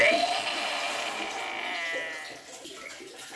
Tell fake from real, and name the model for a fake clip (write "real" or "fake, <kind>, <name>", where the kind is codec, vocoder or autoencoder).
real